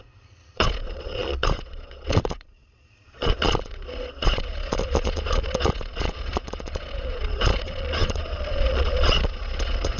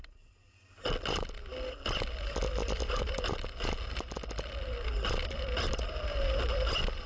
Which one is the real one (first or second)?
second